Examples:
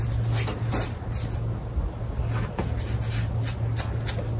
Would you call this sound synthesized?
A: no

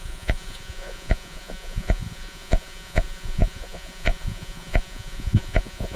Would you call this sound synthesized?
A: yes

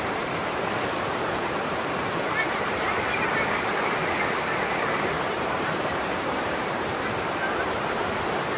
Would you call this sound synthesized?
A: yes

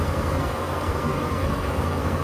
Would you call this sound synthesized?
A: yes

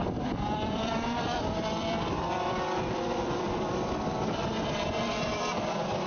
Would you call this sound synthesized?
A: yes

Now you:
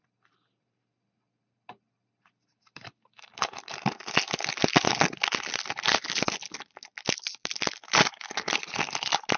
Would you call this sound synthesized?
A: no